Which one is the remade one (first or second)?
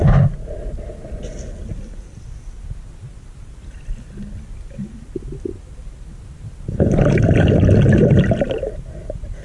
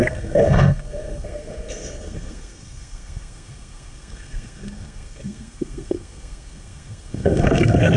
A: second